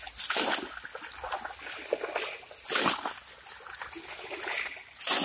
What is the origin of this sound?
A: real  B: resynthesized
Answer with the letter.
A